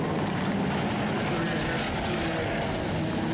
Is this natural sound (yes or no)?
yes